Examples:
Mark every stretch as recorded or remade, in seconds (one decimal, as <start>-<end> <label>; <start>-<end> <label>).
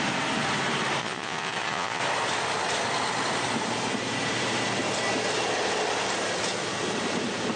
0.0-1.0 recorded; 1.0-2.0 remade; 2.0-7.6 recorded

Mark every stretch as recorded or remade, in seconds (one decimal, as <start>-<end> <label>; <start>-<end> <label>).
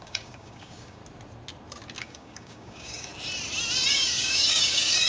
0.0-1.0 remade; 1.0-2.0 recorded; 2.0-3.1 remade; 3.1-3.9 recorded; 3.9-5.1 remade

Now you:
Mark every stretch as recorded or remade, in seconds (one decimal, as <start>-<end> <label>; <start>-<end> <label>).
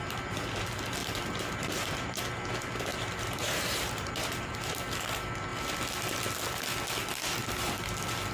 0.0-1.0 recorded; 1.0-2.2 remade; 2.2-2.9 recorded; 2.9-4.5 remade; 4.5-7.4 recorded; 7.4-7.9 remade; 7.9-8.3 recorded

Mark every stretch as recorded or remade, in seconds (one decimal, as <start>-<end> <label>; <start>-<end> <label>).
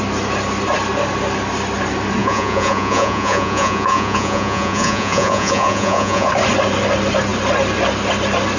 0.0-2.2 recorded; 2.2-6.3 remade; 6.3-8.6 recorded